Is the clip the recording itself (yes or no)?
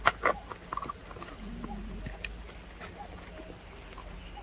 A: yes